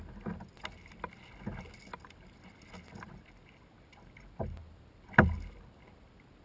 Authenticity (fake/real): real